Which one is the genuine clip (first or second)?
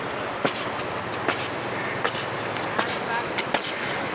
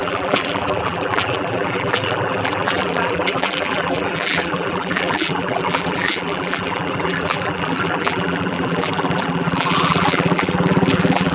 first